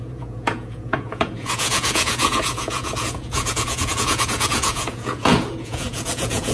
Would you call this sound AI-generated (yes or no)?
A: yes